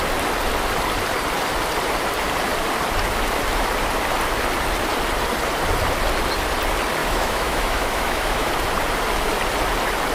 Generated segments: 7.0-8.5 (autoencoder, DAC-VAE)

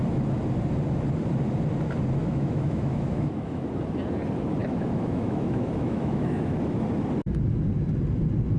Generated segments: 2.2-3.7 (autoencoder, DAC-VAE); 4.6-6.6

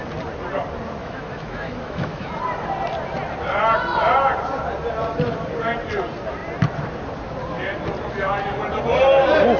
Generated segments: 1.0-2.3 (autoencoder, DAC-VAE)

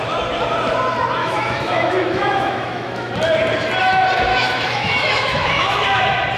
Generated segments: 1.2-3.1 (autoencoder, DAC-VAE); 4.3-6.0

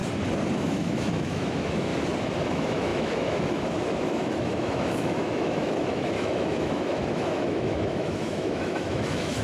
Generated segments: 0.5-1.9 (autoencoder, DAC-VAE); 2.5-9.4

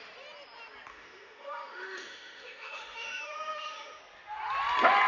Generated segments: 0.9-4.0 (autoencoder, DAC-VAE)